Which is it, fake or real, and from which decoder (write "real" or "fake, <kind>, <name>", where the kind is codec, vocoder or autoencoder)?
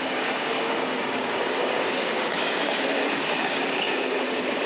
fake, codec, DAC